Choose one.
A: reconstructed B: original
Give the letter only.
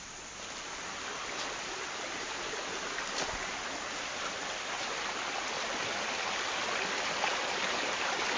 B